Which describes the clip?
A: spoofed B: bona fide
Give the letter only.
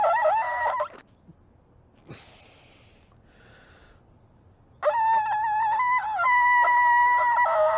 B